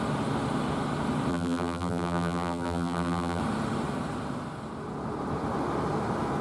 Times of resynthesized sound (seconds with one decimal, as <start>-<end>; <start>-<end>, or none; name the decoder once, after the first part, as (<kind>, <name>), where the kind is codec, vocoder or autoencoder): 1.3-3.4 (vocoder, BigVGAN v2)